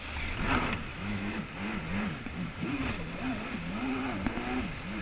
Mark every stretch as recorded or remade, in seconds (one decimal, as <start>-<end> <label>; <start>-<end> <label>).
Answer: 0.0-0.9 recorded; 0.9-1.4 remade; 1.4-5.0 recorded